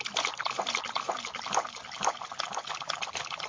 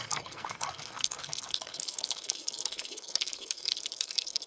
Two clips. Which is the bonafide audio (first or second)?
first